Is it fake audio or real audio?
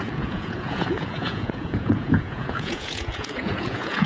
fake